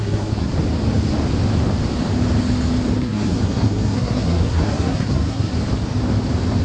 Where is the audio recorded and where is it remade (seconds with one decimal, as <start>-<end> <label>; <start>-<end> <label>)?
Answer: 0.0-0.5 remade; 0.5-3.0 recorded; 3.0-5.5 remade; 5.5-6.6 recorded